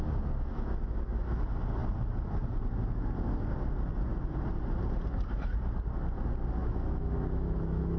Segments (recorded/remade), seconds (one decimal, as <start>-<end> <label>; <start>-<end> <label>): 0.0-0.5 recorded; 0.5-1.2 remade; 1.2-6.6 recorded; 6.6-8.0 remade